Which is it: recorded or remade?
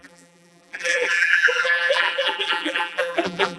remade